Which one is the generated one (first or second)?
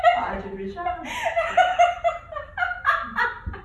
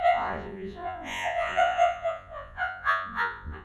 second